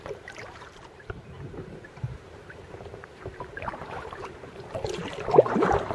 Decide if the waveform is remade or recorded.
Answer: remade